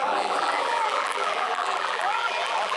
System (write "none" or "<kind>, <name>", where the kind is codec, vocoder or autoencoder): vocoder, BigVGAN v2